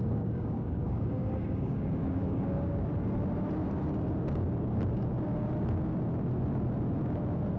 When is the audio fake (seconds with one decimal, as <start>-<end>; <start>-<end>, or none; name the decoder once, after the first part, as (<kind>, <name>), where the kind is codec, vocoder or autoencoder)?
0.0-2.9 (codec, DAC)